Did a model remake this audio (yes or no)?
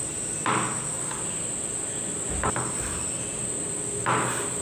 no